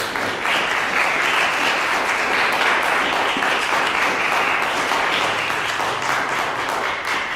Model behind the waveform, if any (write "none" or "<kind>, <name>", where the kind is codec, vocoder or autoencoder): none